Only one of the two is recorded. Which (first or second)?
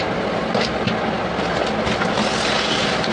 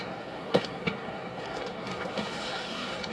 first